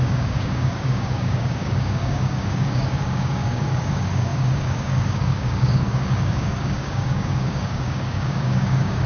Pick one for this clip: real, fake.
fake